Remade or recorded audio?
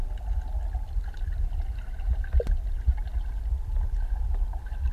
recorded